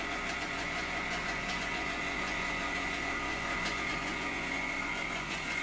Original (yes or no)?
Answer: no